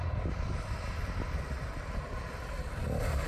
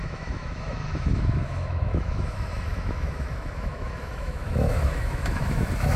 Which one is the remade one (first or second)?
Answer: second